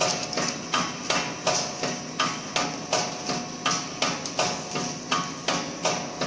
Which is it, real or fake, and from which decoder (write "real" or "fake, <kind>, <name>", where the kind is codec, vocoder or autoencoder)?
real